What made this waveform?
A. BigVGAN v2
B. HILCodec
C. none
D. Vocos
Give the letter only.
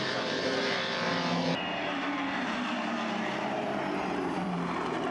A